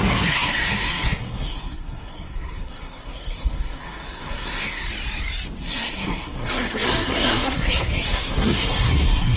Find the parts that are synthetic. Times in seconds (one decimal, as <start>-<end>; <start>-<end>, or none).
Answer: 0.0-4.8; 5.6-9.4